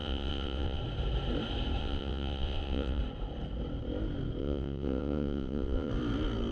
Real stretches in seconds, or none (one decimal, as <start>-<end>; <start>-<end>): 0.8-1.8; 3.0-4.4; 5.9-6.5